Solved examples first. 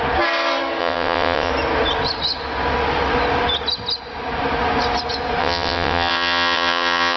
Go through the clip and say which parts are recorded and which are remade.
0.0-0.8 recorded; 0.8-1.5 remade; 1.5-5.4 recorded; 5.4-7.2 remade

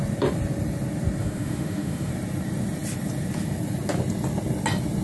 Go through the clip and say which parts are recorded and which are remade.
0.0-1.2 recorded; 1.2-2.1 remade; 2.1-5.0 recorded

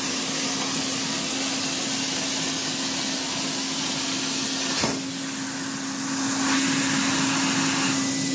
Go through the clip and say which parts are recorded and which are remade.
0.0-8.3 recorded